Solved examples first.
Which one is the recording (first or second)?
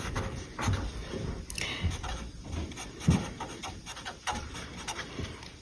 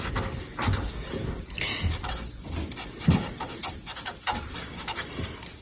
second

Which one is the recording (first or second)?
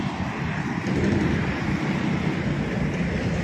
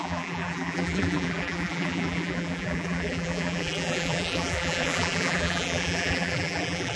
first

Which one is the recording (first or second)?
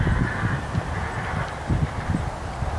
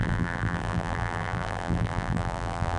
first